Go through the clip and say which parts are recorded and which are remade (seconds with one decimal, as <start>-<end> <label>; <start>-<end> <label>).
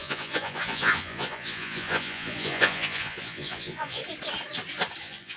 0.0-4.0 remade; 4.0-5.0 recorded; 5.0-5.4 remade